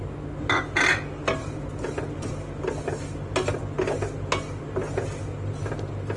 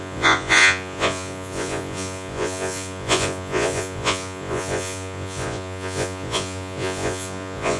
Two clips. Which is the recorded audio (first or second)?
first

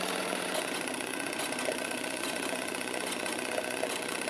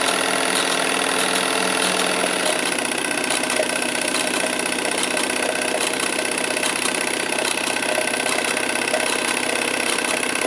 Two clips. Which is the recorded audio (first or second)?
second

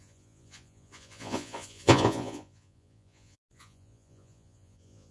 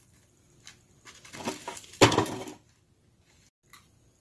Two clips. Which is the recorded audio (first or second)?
second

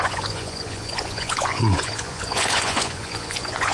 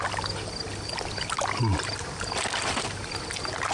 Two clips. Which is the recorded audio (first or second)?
second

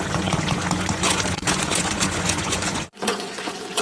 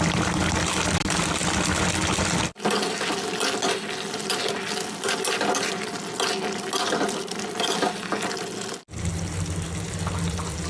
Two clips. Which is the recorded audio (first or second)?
second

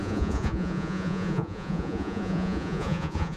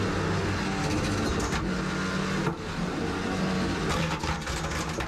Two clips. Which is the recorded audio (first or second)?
second